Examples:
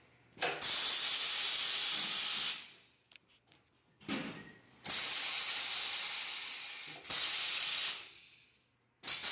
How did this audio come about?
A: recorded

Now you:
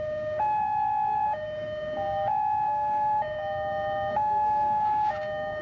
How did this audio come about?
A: remade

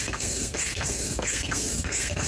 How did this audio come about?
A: remade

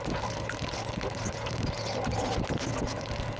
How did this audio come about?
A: recorded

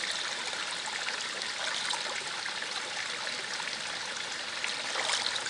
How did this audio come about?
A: recorded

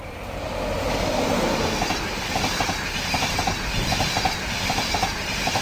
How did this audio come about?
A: recorded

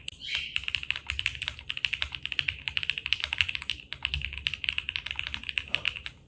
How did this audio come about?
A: recorded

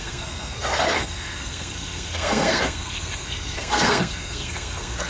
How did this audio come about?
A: remade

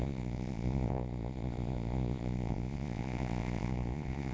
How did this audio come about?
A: remade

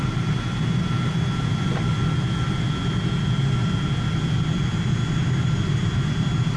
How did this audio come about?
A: recorded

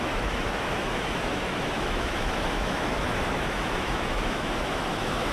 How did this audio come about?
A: remade